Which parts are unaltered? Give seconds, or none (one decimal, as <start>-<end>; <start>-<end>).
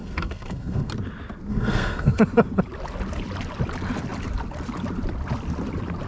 0.9-1.5; 2.2-6.1